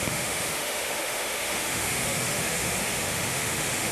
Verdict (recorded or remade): remade